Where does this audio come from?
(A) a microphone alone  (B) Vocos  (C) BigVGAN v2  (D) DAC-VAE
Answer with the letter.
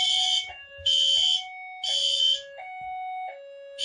A